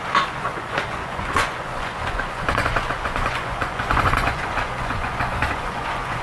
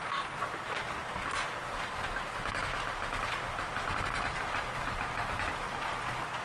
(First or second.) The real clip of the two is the second